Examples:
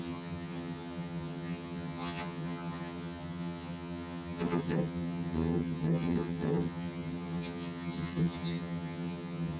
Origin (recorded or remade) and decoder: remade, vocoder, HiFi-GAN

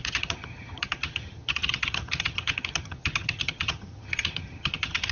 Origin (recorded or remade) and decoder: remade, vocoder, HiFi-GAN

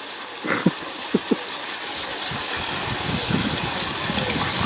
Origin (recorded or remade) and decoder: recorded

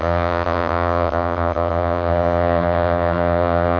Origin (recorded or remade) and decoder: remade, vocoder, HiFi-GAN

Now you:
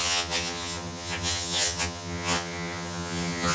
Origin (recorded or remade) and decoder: remade, vocoder, HiFi-GAN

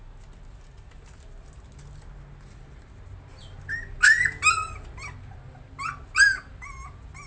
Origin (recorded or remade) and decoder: recorded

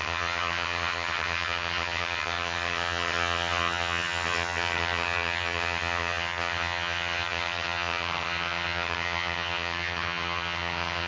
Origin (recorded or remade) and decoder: remade, vocoder, HiFi-GAN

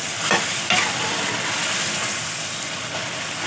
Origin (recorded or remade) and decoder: recorded